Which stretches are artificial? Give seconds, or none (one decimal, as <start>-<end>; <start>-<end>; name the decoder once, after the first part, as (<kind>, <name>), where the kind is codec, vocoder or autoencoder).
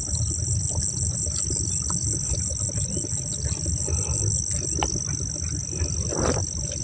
none